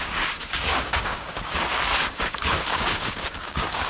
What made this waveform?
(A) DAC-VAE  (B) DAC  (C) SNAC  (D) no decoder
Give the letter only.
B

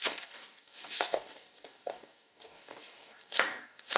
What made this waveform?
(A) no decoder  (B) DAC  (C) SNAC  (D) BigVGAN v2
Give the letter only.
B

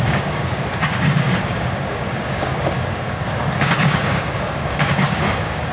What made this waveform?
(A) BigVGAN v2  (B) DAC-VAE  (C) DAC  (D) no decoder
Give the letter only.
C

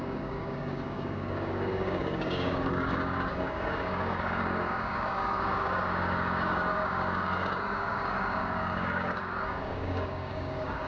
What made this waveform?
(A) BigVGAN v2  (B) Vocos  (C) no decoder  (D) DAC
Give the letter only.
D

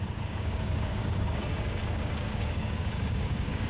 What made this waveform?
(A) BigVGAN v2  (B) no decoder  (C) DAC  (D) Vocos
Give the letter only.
C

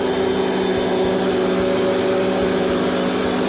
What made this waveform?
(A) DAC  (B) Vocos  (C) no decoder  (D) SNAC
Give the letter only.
C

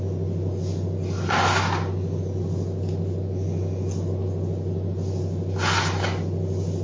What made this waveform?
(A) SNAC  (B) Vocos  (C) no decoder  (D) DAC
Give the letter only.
C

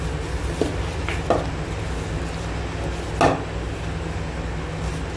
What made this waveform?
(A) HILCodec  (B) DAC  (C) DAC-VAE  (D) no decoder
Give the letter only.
D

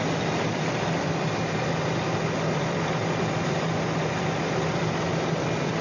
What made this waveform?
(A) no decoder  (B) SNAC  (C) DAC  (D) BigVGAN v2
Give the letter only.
A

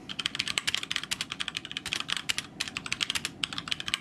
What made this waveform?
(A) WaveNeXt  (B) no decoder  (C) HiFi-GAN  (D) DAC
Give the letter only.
B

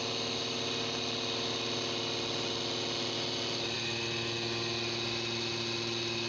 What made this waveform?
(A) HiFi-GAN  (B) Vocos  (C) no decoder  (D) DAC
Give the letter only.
C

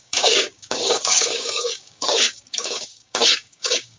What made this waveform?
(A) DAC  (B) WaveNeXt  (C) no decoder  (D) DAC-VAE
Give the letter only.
A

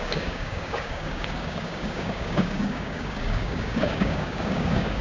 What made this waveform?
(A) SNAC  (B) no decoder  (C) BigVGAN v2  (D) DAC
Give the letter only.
D